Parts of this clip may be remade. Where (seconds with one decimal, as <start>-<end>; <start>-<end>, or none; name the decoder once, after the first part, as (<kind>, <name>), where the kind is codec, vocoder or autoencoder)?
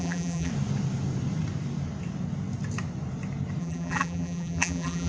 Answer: 0.0-0.5 (vocoder, BigVGAN v2); 3.6-5.1